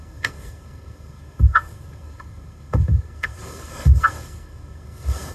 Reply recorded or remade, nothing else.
remade